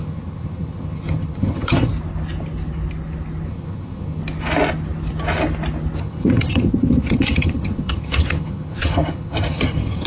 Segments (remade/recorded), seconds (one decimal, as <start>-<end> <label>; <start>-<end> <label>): 0.0-1.9 remade; 1.9-3.5 recorded; 3.5-4.2 remade; 4.2-6.0 recorded; 6.0-10.1 remade